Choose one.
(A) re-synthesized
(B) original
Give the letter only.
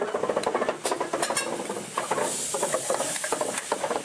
B